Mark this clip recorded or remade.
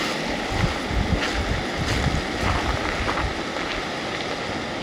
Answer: recorded